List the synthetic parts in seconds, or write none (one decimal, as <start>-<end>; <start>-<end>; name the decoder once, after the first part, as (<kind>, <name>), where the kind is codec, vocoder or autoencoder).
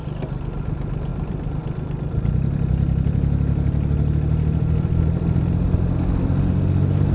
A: 1.1-5.4 (vocoder, BigVGAN v2)